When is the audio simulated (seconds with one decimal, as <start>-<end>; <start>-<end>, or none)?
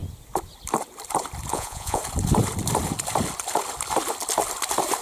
1.5-2.0